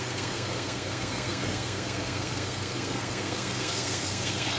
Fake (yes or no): yes